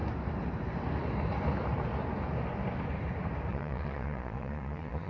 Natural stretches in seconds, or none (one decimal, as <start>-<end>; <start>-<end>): 0.0-3.5